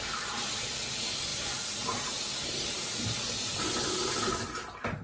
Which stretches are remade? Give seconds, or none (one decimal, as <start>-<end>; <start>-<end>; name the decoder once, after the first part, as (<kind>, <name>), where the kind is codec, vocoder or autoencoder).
none